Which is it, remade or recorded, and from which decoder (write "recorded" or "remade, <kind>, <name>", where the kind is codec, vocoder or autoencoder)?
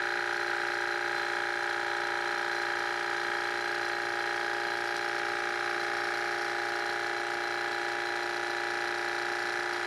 recorded